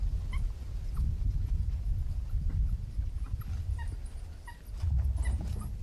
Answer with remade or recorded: recorded